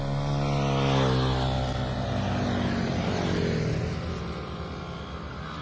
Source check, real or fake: real